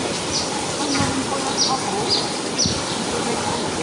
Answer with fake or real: real